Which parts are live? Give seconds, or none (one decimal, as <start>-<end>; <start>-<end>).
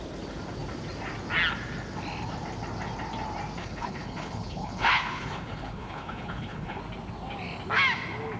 0.0-3.6; 6.8-8.4